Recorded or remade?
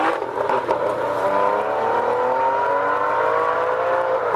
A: recorded